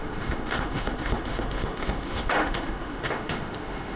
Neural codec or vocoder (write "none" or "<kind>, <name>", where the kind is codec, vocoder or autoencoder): autoencoder, DAC-VAE